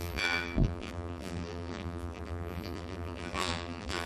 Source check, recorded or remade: remade